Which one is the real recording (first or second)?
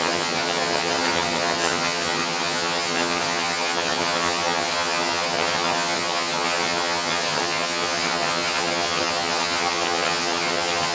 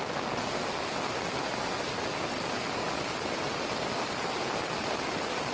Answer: second